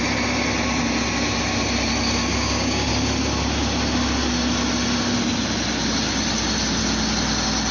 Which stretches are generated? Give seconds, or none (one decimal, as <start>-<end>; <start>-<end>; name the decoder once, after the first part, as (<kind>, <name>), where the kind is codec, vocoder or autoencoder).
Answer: 2.3-2.9 (codec, DAC)